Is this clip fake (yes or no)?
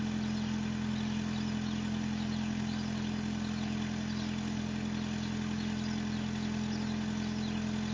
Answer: no